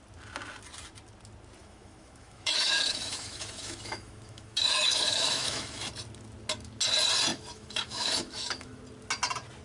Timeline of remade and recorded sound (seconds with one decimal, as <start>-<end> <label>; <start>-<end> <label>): 0.0-1.6 recorded; 1.6-5.9 remade; 5.9-7.3 recorded; 7.3-8.8 remade; 8.8-9.6 recorded